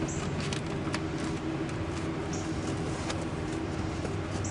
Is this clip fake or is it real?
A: real